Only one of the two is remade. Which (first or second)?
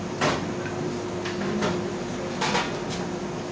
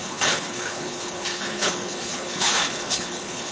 second